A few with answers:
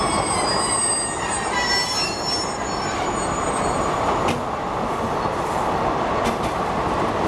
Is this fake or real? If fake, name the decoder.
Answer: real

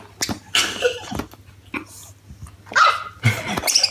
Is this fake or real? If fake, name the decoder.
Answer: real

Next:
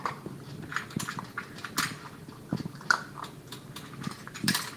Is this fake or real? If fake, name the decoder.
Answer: real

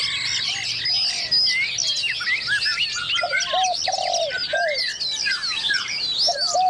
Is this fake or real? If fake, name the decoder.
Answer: real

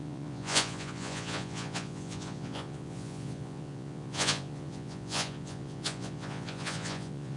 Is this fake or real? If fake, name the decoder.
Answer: fake, vocoder, Vocos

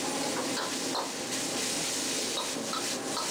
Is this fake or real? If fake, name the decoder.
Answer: real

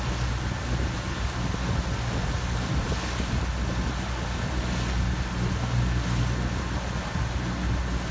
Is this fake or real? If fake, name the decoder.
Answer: real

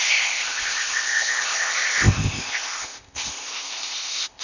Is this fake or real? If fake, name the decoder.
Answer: fake, codec, ZipCodec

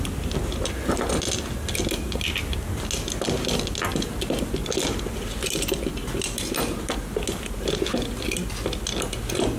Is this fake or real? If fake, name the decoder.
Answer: real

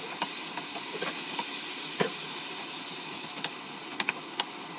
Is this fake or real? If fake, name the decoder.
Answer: real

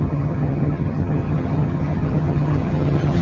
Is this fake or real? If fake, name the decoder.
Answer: fake, vocoder, HiFi-GAN